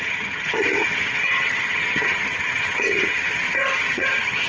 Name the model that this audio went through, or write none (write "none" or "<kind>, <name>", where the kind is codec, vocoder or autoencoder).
vocoder, HiFi-GAN